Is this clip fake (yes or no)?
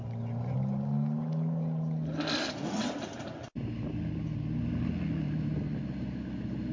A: no